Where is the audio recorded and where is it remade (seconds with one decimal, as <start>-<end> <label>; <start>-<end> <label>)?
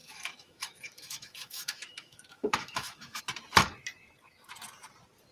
0.0-3.2 remade; 3.2-5.3 recorded